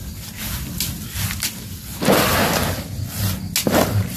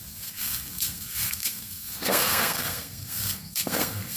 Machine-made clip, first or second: second